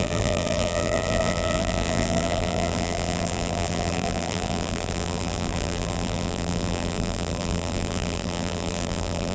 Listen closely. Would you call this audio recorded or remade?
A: remade